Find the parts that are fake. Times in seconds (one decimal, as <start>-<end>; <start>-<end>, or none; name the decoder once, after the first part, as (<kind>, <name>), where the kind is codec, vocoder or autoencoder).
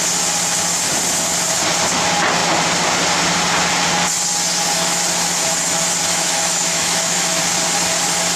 6.1-7.4 (autoencoder, DAC-VAE)